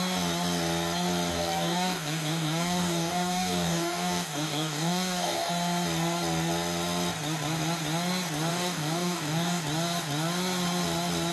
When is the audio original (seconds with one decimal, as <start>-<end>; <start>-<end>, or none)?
0.0-1.3; 5.5-8.5; 9.6-11.3